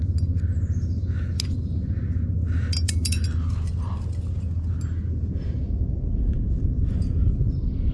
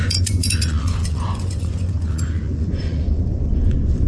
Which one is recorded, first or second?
first